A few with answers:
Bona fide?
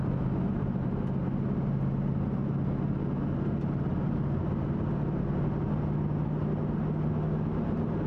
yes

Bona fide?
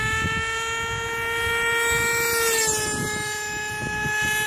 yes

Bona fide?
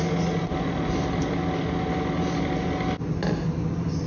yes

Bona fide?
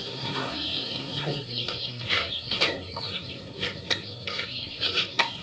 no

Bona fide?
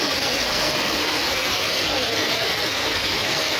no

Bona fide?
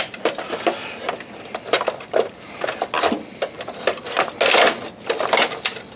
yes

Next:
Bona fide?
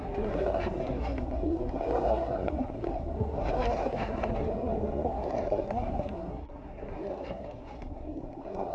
no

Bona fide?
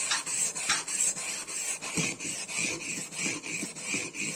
yes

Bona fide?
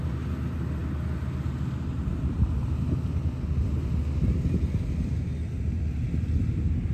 yes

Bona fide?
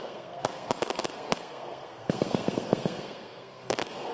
no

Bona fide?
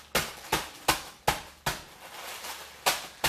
yes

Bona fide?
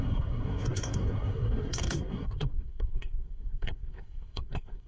no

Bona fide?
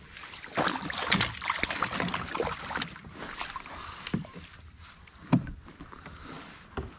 yes